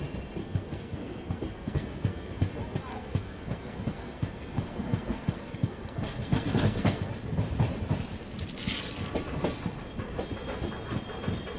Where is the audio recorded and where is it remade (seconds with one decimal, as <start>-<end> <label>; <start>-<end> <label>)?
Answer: 0.0-0.4 recorded; 0.4-2.5 remade; 2.5-2.9 recorded; 2.9-7.1 remade; 7.1-11.6 recorded